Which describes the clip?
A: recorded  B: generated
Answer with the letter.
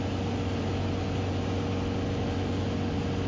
A